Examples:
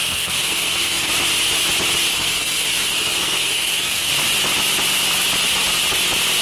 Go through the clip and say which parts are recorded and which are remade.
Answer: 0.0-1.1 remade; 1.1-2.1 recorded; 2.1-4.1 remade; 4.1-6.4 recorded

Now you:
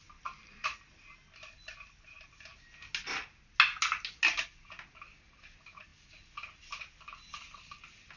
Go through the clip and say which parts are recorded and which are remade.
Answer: 0.0-8.2 recorded

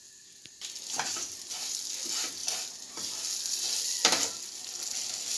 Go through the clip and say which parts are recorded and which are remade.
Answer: 0.0-5.4 recorded

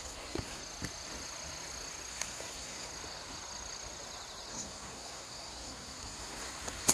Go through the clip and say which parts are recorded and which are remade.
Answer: 0.0-0.6 remade; 0.6-2.1 recorded; 2.1-2.9 remade; 2.9-4.5 recorded; 4.5-6.9 remade